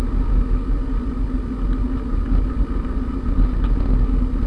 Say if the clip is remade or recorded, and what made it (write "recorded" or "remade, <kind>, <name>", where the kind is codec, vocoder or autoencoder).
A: recorded